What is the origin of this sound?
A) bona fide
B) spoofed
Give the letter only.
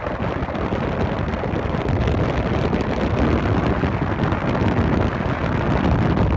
A